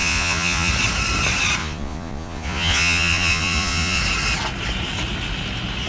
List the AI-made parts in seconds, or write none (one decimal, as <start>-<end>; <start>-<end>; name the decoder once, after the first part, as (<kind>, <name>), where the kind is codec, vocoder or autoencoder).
0.0-0.7 (vocoder, Vocos); 1.6-4.0